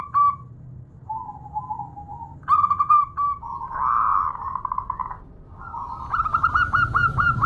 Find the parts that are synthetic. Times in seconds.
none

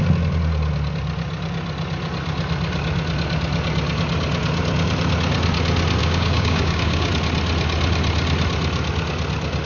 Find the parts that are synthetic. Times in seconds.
6.0-7.1

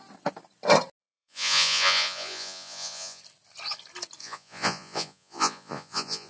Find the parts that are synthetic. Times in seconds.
1.0-3.2; 4.2-6.3